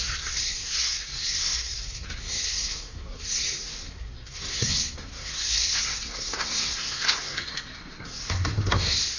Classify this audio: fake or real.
fake